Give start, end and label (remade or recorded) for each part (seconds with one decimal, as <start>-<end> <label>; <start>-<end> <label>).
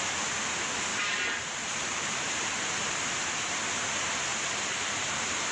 0.0-0.9 recorded; 0.9-2.9 remade; 2.9-4.3 recorded; 4.3-5.5 remade